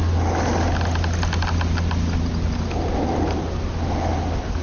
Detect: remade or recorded recorded